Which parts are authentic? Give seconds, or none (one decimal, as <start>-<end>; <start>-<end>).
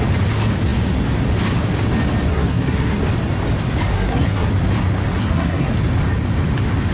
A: 0.0-2.3; 3.0-3.9; 4.5-5.1; 5.7-6.9